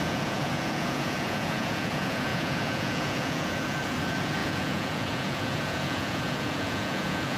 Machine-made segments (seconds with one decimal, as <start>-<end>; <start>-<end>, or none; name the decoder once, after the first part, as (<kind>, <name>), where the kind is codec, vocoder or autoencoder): 0.0-7.4 (vocoder, Vocos)